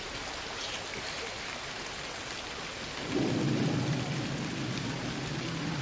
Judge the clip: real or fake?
real